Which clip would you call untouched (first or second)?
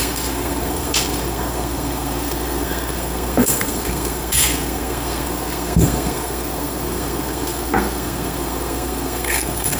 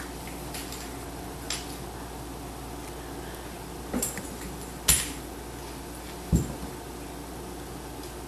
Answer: second